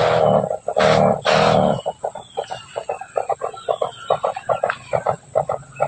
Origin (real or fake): real